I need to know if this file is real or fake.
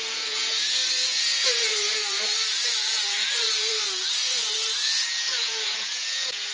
fake